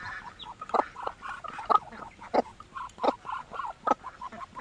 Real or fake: real